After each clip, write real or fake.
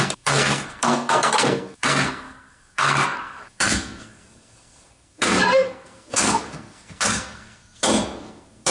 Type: fake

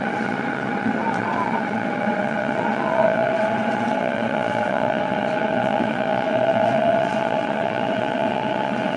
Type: fake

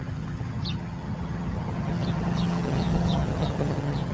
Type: fake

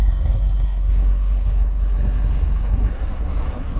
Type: fake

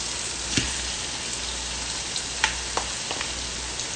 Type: real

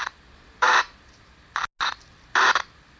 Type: real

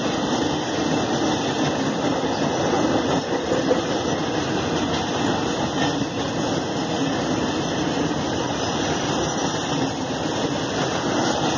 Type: real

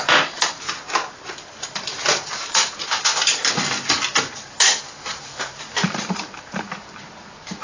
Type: real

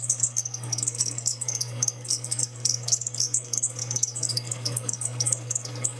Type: fake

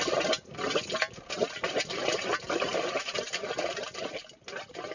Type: real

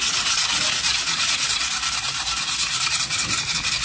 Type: fake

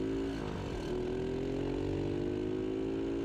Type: real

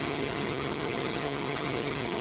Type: fake